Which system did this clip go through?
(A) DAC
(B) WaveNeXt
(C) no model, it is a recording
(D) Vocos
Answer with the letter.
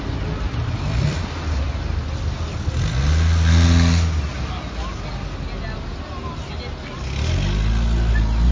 C